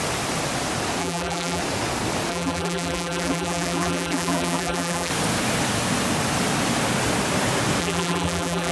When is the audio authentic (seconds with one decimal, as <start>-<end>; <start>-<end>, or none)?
0.0-1.0; 1.6-2.3; 5.1-7.8